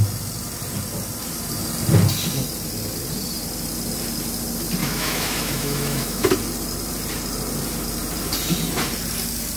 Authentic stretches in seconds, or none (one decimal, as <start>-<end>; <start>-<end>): 0.0-4.8; 6.3-9.6